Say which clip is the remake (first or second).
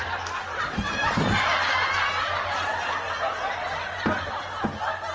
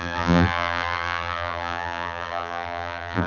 second